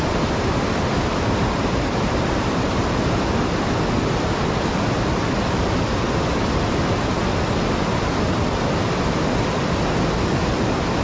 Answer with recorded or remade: recorded